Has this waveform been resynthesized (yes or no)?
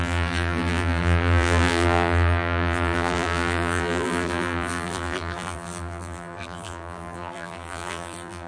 yes